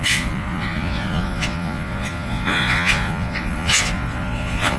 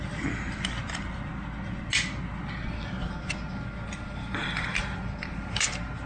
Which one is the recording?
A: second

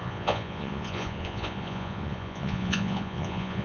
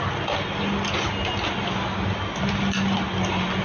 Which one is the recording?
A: second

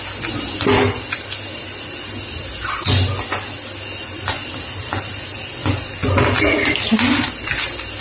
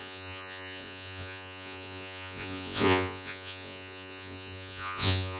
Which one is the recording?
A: first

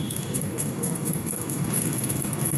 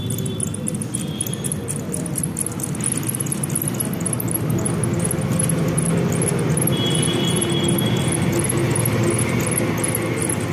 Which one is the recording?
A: second